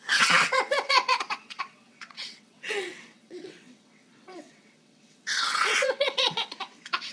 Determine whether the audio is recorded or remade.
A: remade